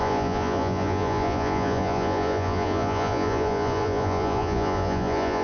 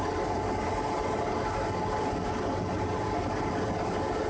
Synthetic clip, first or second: first